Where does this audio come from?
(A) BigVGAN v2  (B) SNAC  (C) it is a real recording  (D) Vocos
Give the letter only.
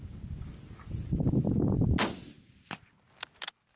C